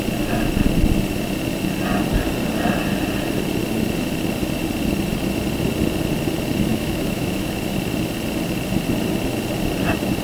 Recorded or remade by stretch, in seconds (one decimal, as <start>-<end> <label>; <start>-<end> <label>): 0.0-6.7 recorded; 6.7-7.5 remade; 7.5-10.2 recorded